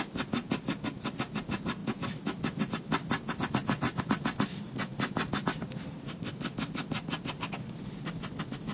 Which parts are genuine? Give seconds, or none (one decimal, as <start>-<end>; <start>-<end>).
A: 0.0-8.7